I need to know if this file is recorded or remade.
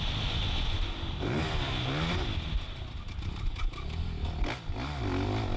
recorded